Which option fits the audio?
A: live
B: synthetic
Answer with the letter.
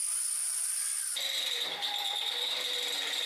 A